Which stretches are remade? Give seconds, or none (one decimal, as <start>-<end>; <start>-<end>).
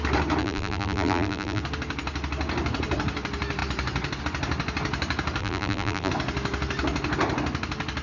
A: 0.4-1.6; 5.4-6.1